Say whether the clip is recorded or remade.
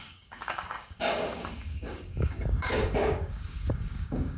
remade